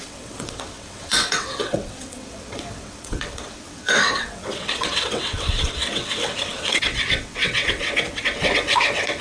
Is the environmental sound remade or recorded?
remade